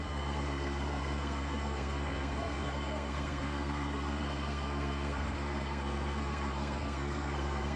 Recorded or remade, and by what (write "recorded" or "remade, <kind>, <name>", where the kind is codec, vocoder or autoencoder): remade, codec, SNAC